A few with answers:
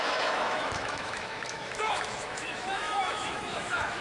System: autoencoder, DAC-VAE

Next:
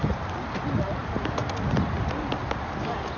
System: none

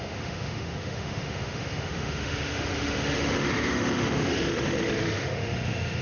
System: autoencoder, DAC-VAE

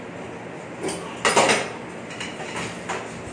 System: none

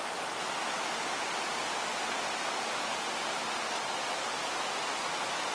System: none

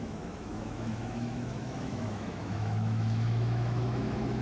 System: autoencoder, DAC-VAE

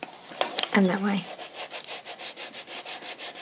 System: none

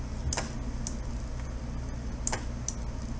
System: none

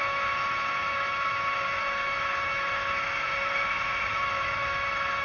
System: autoencoder, DAC-VAE